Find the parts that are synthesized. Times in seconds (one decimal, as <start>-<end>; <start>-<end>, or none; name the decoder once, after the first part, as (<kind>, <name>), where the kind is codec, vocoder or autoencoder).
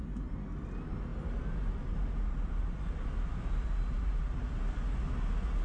none